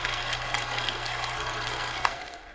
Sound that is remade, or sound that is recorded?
remade